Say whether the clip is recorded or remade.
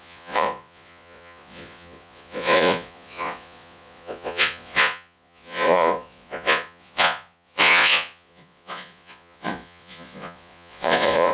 remade